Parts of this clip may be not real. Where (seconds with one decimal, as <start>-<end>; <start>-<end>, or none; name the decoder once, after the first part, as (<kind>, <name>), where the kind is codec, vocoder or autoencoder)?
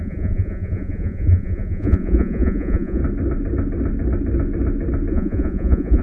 0.0-3.0 (vocoder, Vocos); 5.1-6.0